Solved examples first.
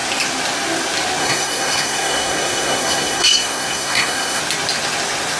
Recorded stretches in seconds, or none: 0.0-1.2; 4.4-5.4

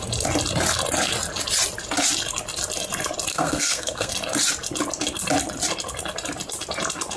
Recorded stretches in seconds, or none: 0.0-3.3; 4.1-7.2

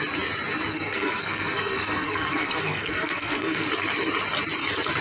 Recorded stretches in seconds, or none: 0.0-0.7; 3.7-5.0